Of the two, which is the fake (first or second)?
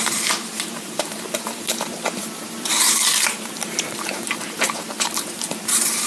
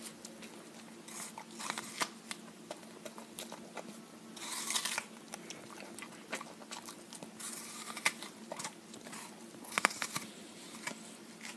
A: first